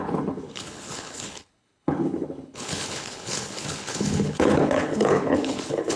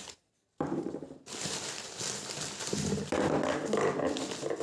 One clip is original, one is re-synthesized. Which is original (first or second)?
second